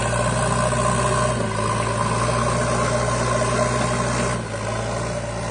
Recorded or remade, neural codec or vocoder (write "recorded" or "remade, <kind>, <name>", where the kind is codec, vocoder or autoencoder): recorded